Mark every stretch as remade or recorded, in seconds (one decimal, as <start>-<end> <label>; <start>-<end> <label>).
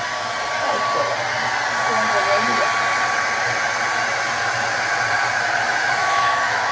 0.0-6.0 recorded; 6.0-6.7 remade